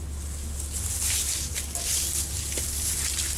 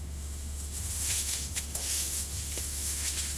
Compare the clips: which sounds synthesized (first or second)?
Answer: second